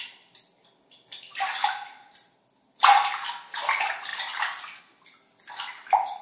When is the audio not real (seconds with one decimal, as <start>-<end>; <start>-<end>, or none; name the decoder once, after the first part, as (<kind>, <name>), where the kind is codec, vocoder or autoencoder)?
none